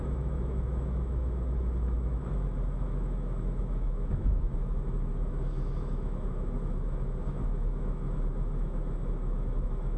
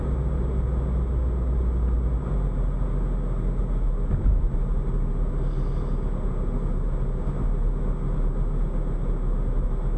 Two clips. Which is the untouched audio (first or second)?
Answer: second